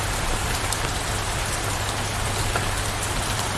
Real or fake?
real